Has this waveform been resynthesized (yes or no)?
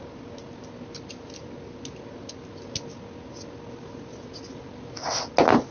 no